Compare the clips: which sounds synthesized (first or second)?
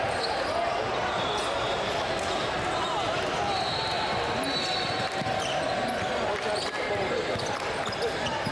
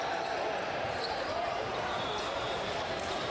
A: second